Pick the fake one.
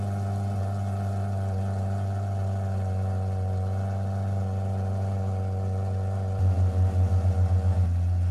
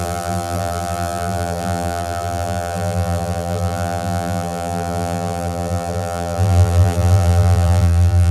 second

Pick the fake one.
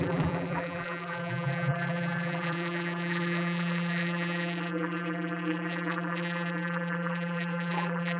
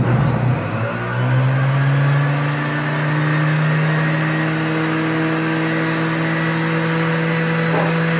first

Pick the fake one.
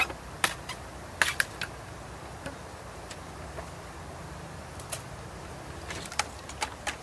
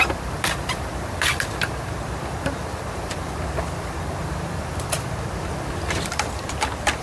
second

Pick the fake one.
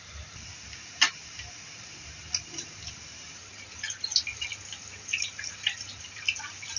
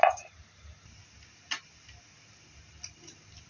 first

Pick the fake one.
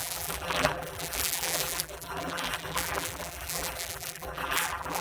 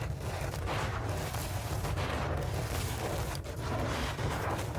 first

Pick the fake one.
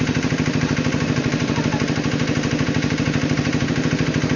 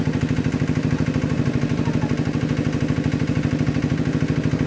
first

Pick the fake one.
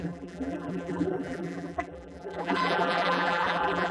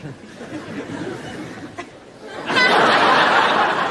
first